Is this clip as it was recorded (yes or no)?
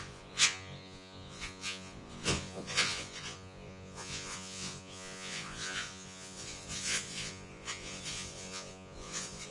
no